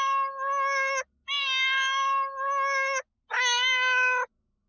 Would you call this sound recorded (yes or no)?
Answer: yes